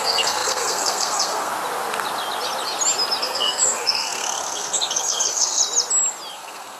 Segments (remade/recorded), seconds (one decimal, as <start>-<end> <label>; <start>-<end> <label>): 0.0-1.5 remade; 1.5-3.2 recorded; 3.2-5.6 remade; 5.6-6.3 recorded; 6.3-6.8 remade